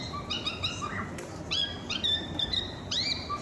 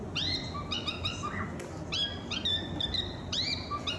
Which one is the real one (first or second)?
second